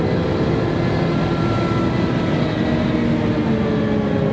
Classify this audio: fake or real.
real